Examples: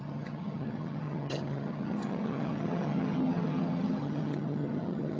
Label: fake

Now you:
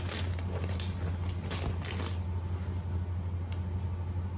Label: real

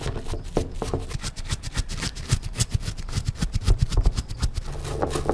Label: real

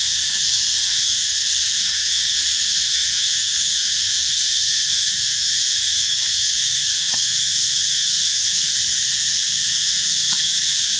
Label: fake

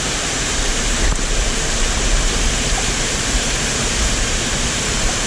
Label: fake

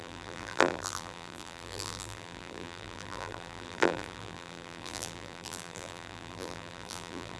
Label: fake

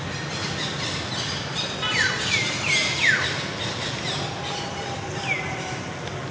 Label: real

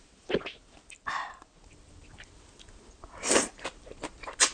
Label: real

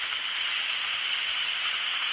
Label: real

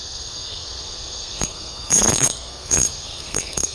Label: fake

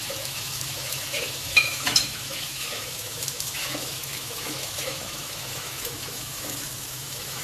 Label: fake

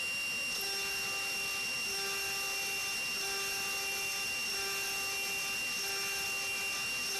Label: real